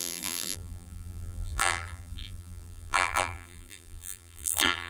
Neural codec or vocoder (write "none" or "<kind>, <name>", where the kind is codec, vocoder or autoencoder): vocoder, BigVGAN v2